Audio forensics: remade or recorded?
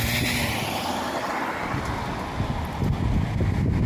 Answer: recorded